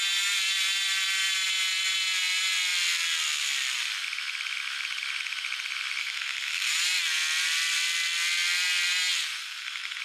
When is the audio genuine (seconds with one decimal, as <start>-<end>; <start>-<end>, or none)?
0.0-6.0; 6.7-9.4